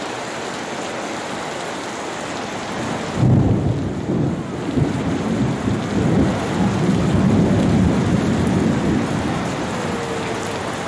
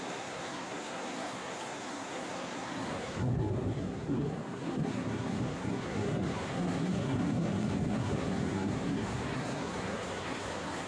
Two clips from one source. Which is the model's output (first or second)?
second